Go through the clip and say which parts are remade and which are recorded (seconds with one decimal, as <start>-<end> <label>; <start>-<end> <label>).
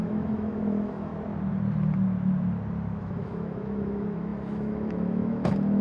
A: 0.0-1.1 remade; 1.1-3.0 recorded; 3.0-5.8 remade